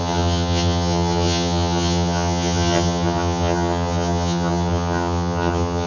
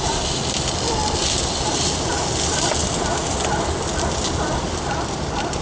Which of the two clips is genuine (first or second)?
second